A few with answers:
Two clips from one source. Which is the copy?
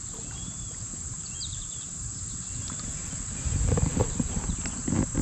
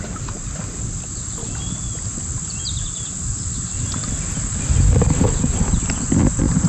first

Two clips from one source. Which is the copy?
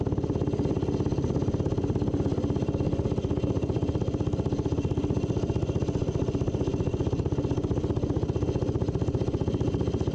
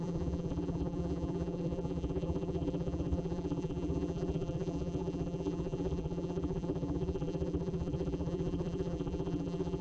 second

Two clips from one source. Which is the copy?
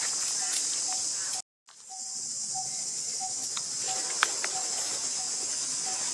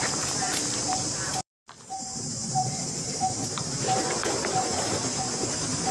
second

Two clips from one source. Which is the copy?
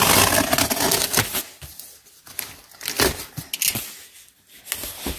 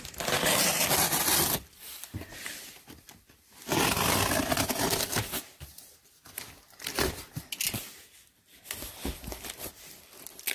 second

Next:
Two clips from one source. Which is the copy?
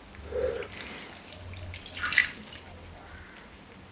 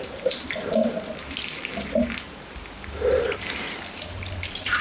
second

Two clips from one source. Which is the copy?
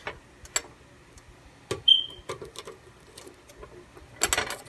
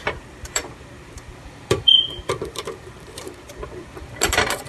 second